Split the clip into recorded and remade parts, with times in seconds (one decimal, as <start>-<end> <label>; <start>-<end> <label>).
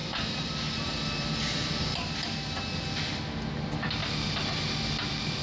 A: 0.0-3.2 remade; 3.2-4.0 recorded; 4.0-4.6 remade; 4.6-5.4 recorded